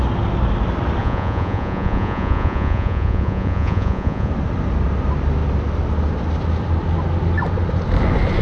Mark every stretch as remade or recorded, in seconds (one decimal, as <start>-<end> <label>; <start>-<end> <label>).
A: 0.0-1.0 recorded; 1.0-4.3 remade; 4.3-8.4 recorded

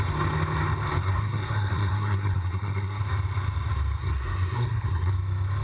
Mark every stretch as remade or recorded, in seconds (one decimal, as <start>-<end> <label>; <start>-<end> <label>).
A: 0.0-1.0 recorded; 1.0-3.0 remade; 3.0-4.0 recorded; 4.0-5.1 remade; 5.1-5.6 recorded

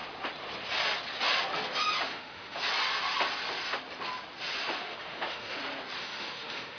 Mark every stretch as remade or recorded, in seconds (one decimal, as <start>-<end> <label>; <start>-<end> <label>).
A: 0.0-2.1 recorded; 2.1-2.6 remade; 2.6-4.8 recorded; 4.8-5.6 remade; 5.6-6.0 recorded; 6.0-6.8 remade